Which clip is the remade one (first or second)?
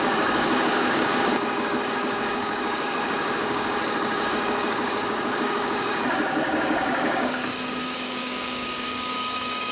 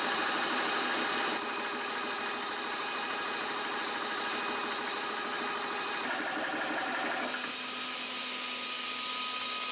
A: first